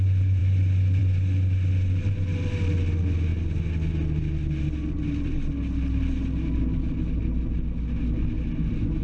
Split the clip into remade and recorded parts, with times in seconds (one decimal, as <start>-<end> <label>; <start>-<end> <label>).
0.0-9.0 recorded